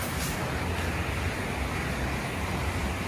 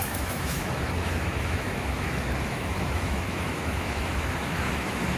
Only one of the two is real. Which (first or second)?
first